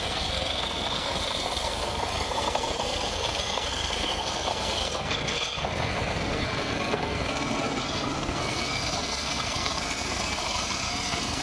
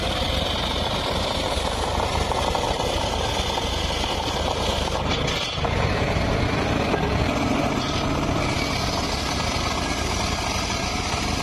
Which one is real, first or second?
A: second